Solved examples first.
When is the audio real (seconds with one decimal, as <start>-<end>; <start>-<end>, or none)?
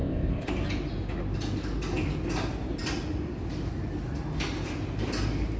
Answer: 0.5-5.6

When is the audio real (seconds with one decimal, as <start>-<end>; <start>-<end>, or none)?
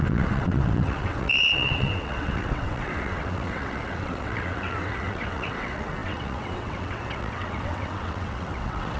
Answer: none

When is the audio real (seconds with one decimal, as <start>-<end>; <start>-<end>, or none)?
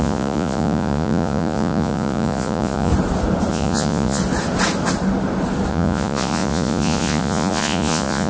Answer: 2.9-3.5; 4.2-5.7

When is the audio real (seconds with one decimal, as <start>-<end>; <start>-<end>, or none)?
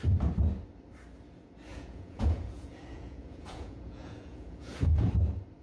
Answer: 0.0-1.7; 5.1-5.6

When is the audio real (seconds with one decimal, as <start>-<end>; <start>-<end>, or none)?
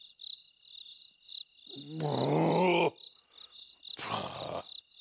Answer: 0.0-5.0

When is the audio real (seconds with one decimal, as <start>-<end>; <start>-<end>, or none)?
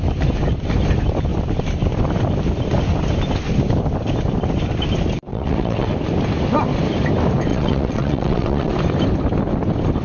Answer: 0.0-5.3; 5.9-7.5; 8.7-10.0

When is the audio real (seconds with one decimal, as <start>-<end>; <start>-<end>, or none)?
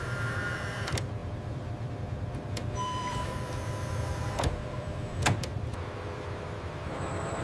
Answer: none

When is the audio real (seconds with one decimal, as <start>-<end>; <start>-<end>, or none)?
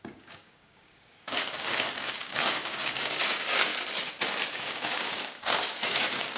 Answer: 3.7-4.5